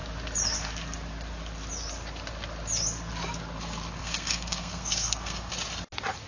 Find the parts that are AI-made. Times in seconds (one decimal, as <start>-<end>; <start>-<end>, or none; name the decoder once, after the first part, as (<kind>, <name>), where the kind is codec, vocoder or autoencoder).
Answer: 4.0-5.5 (codec, SNAC)